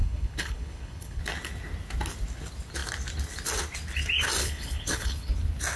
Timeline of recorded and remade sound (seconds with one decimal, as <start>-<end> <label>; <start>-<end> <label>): 0.0-1.2 remade; 1.2-4.4 recorded; 4.4-5.3 remade; 5.3-5.8 recorded